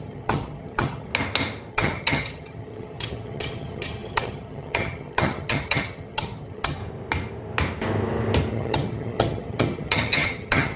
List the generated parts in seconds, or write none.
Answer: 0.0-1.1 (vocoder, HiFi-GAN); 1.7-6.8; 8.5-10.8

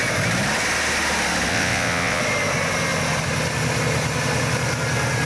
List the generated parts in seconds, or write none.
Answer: 1.5-2.2 (vocoder, WaveNeXt)